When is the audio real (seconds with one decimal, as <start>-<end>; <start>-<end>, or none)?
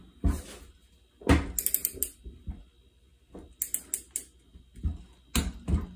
0.0-6.0